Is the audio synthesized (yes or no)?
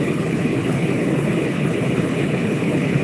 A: yes